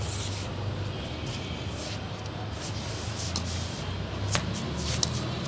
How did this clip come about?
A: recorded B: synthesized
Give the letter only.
A